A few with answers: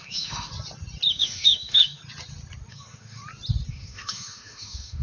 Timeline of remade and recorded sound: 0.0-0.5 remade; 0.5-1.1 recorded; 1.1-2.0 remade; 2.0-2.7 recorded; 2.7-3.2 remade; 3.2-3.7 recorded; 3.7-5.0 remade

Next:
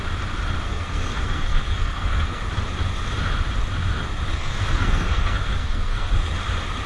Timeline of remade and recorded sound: 0.0-0.6 recorded; 0.6-2.4 remade; 2.4-4.3 recorded; 4.3-6.1 remade; 6.1-6.9 recorded

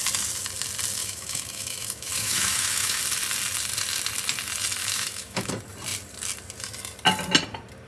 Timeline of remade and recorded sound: 0.0-1.0 recorded; 1.0-3.0 remade; 3.0-4.8 recorded; 4.8-5.5 remade; 5.5-7.9 recorded